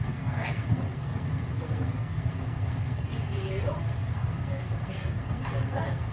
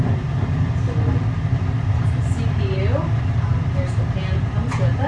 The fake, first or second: first